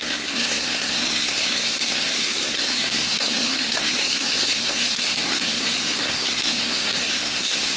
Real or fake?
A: fake